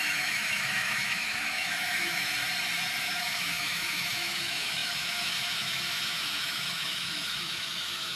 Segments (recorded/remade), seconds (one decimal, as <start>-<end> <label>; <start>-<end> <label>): 0.0-2.3 remade; 2.3-3.0 recorded; 3.0-8.2 remade

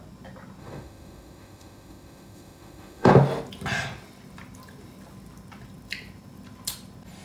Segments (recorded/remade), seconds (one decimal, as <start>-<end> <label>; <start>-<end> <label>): 0.0-0.6 recorded; 0.6-3.1 remade; 3.1-7.2 recorded

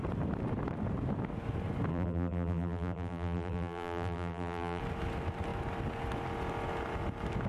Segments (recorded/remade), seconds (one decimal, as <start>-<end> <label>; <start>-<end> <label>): 0.0-1.9 recorded; 1.9-4.8 remade; 4.8-7.5 recorded

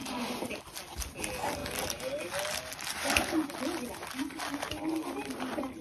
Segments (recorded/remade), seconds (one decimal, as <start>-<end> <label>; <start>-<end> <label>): 0.0-5.8 recorded

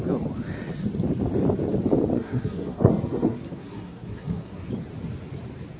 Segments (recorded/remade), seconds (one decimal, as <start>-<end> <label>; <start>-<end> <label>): 0.0-2.1 recorded; 2.1-4.7 remade; 4.7-5.8 recorded

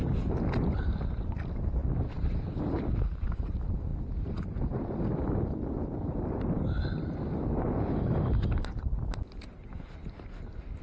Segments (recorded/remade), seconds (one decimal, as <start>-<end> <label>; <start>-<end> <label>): 0.0-1.8 recorded; 1.8-2.5 remade; 2.5-3.9 recorded; 3.9-5.2 remade; 5.2-10.8 recorded

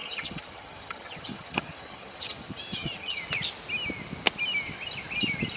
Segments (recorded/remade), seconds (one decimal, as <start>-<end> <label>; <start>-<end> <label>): 0.0-3.2 remade; 3.2-5.6 recorded

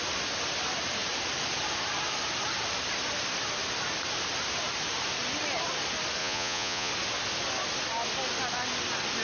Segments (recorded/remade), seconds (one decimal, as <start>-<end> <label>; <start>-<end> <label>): 0.0-6.2 recorded; 6.2-6.9 remade; 6.9-9.2 recorded